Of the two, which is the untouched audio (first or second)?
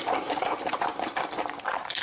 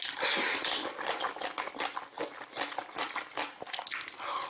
second